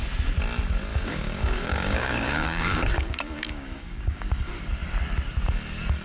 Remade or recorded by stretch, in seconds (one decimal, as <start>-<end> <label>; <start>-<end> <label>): 0.0-0.9 recorded; 0.9-4.5 remade; 4.5-6.0 recorded